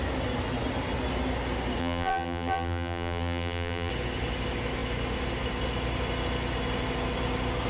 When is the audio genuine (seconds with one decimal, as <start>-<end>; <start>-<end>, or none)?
0.0-1.8; 3.9-7.7